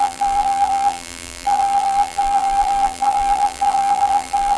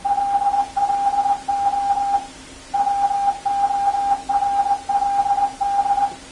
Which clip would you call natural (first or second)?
second